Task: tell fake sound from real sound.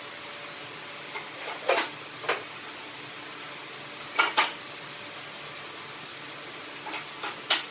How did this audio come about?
real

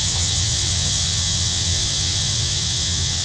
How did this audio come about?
fake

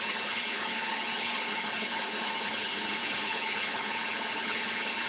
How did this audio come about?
fake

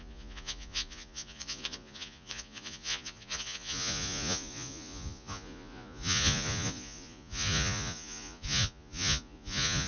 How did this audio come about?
fake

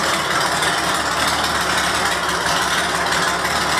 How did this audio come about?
real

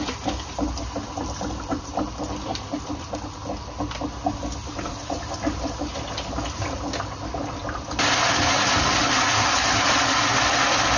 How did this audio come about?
real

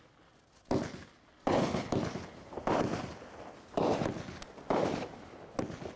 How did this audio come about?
real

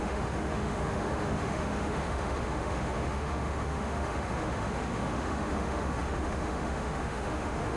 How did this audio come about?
fake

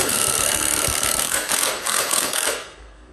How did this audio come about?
fake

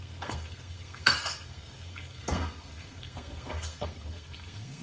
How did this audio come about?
fake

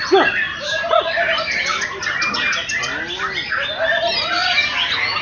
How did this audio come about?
real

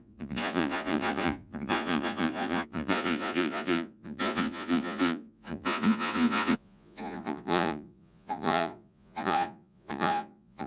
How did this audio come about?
fake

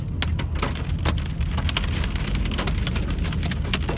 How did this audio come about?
real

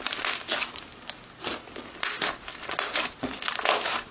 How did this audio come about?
real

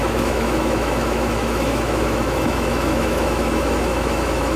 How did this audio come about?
fake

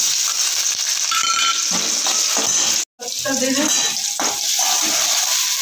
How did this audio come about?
real